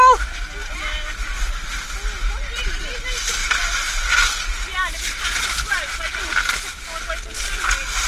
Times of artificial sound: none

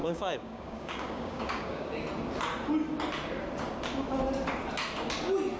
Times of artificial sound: 0.0-1.9 (codec, DAC)

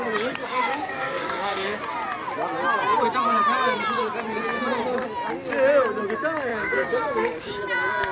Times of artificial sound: 0.4-1.8 (codec, DAC); 6.5-7.6

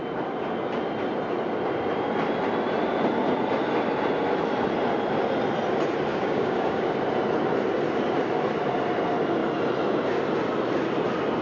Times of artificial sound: 6.1-6.9 (codec, DAC)

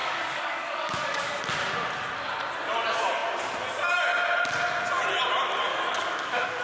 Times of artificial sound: 0.0-1.4 (codec, DAC); 5.7-6.6

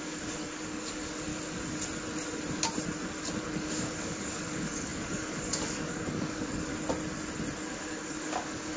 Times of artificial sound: 0.0-1.3 (codec, DAC); 3.4-6.7; 7.7-8.8

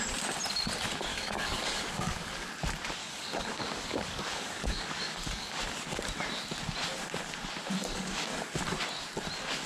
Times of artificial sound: 1.1-2.5 (codec, DAC); 3.0-5.6; 7.8-8.5